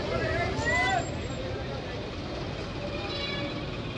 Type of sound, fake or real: real